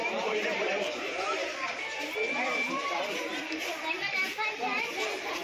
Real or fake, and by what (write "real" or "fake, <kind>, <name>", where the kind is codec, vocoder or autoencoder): fake, vocoder, BigVGAN v2